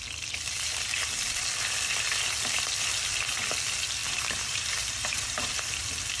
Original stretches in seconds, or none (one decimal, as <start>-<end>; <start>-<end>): 0.0-4.0; 5.5-6.2